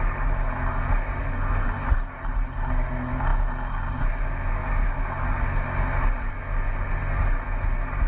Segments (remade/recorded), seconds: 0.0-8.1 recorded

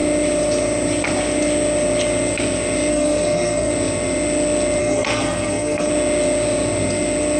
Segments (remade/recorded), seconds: 0.0-2.9 recorded; 2.9-3.7 remade; 3.7-4.8 recorded; 4.8-5.9 remade; 5.9-7.4 recorded

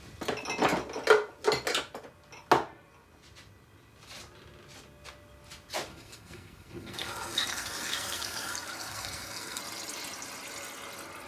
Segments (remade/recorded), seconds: 0.0-5.9 recorded; 5.9-9.6 remade; 9.6-11.3 recorded